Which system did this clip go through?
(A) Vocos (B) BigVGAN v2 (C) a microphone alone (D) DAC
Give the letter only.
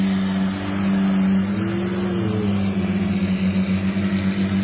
C